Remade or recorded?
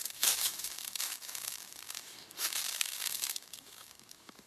remade